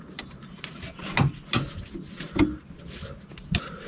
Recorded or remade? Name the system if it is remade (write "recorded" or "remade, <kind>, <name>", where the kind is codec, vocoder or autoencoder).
recorded